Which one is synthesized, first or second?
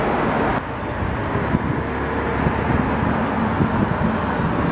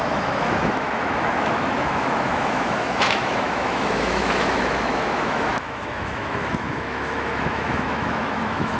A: second